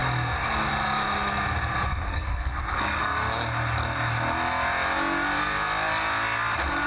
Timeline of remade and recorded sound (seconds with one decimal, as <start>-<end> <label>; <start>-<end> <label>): 0.0-2.1 recorded; 2.1-3.0 remade; 3.0-6.9 recorded